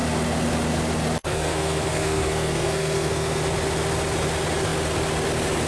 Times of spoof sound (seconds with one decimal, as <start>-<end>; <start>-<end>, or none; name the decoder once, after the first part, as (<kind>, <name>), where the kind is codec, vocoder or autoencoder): 1.2-3.4 (codec, SNAC)